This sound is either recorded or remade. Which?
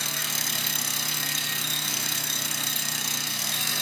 remade